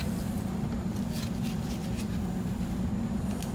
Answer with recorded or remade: recorded